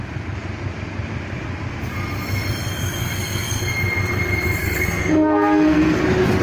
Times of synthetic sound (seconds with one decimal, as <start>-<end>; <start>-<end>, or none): 3.0-3.6; 4.6-6.0

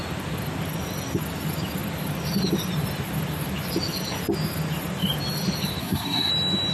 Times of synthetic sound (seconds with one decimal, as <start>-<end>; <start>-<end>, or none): 5.8-6.3

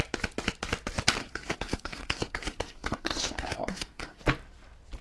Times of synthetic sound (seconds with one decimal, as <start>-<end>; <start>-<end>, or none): 1.2-4.2

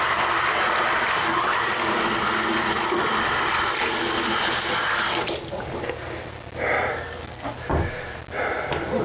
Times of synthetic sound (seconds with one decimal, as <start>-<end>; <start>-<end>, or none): 6.9-7.5

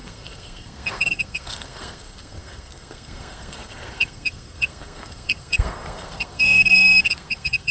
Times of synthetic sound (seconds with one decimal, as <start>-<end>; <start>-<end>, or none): 0.0-7.7